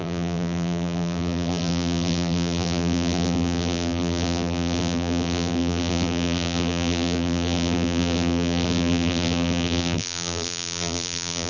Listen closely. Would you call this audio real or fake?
fake